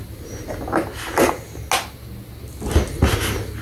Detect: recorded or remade recorded